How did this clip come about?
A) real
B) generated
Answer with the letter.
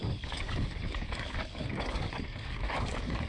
B